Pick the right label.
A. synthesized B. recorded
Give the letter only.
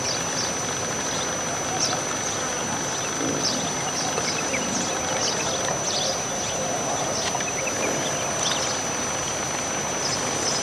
B